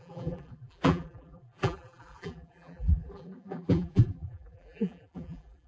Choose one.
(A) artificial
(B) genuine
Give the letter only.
A